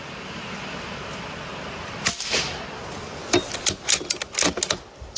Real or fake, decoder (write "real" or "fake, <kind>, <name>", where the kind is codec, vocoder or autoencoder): real